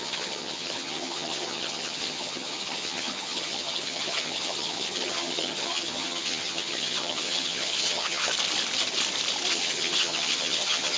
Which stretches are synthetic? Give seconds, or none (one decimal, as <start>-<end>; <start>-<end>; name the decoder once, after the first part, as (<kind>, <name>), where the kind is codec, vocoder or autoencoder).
0.0-8.3 (vocoder, HiFi-GAN); 9.5-11.0